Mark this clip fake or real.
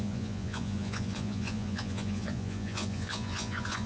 fake